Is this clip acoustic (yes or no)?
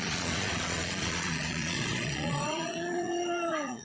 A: no